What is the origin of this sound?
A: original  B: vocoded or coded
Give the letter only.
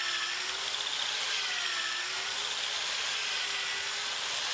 A